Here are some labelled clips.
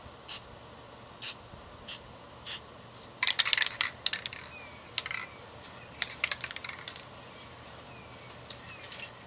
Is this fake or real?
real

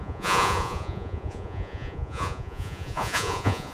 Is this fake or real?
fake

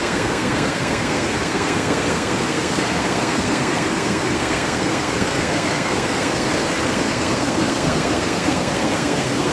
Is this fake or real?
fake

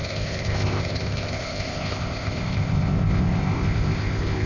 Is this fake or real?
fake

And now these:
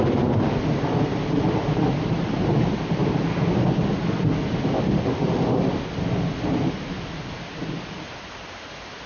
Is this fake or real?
real